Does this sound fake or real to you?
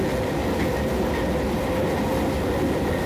real